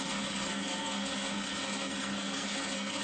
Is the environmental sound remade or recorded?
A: remade